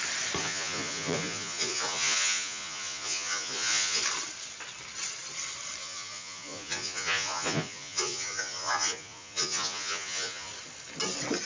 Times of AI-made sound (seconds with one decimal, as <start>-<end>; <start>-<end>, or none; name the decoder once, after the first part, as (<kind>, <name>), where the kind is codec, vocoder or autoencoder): 0.4-4.0 (vocoder, Vocos); 5.8-10.5